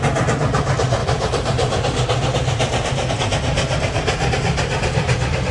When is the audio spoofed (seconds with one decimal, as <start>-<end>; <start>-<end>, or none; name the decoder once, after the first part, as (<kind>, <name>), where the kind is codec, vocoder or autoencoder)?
1.0-3.1 (vocoder, BigVGAN v2)